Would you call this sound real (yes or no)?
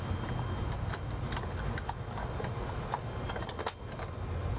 yes